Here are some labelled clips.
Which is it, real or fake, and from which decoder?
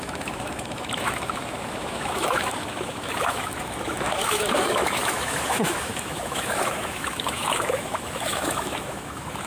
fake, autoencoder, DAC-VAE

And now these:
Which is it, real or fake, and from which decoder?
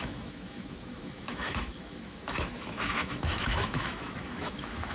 fake, autoencoder, DAC-VAE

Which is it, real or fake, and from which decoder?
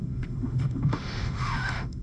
fake, autoencoder, DAC-VAE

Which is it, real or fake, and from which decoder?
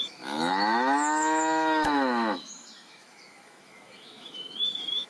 fake, autoencoder, DAC-VAE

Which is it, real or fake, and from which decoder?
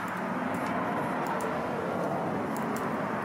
real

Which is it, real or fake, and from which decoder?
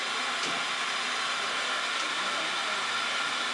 real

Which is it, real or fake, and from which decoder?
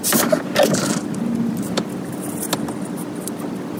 real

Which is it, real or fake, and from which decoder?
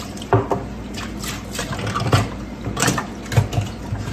real